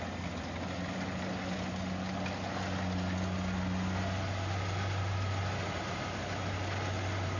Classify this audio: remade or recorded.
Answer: recorded